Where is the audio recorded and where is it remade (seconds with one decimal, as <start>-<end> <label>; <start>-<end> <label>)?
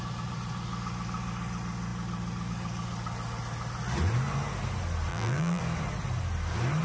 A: 0.0-5.1 recorded; 5.1-5.6 remade; 5.6-6.8 recorded